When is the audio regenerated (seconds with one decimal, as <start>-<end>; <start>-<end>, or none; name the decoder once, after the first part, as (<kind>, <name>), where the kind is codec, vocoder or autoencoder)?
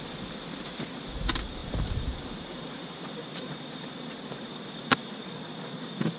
1.6-5.3 (vocoder, BigVGAN v2)